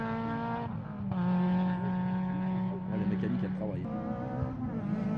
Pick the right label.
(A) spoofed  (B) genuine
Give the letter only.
B